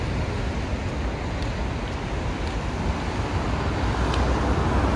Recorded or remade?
recorded